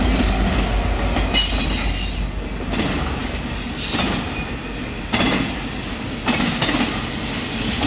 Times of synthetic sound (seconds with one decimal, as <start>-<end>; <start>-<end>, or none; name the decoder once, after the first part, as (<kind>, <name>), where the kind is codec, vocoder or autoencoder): none